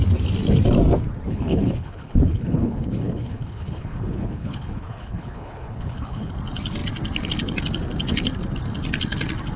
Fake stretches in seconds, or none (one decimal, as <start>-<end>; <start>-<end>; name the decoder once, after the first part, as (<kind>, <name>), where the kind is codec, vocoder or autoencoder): 1.3-6.3 (codec, HILCodec)